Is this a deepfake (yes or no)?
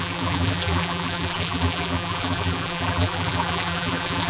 yes